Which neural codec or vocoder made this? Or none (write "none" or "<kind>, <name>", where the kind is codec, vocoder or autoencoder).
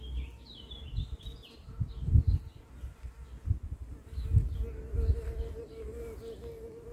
none